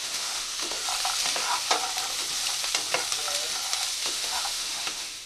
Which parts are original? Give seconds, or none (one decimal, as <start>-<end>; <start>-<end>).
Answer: 0.8-4.0